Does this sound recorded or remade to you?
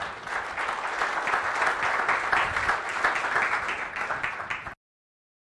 recorded